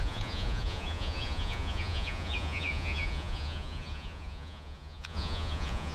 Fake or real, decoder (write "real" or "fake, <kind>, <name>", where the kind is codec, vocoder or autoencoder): fake, vocoder, Vocos